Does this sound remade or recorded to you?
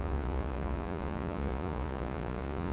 remade